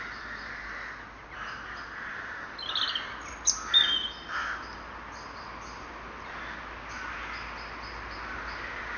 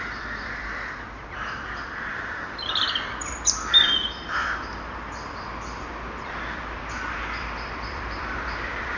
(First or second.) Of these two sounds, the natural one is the first